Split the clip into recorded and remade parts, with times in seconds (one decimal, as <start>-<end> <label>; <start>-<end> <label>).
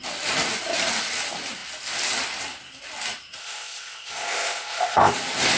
0.0-3.4 recorded; 3.4-5.1 remade; 5.1-5.6 recorded